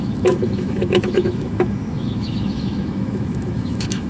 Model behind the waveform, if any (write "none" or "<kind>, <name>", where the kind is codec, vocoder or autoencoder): autoencoder, DAC-VAE